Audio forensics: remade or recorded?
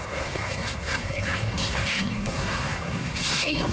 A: remade